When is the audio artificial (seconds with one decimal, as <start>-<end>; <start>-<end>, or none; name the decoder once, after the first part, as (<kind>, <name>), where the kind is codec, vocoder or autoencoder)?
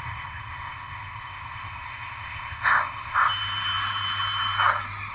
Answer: 0.0-3.3 (codec, ZipCodec)